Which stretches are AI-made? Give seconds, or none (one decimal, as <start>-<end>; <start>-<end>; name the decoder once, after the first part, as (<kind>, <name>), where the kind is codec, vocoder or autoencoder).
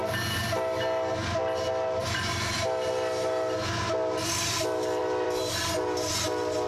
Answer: 2.0-2.6 (vocoder, BigVGAN v2); 5.0-5.7